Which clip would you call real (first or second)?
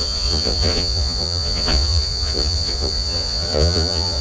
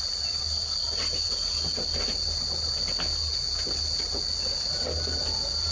second